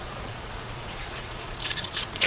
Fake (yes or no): yes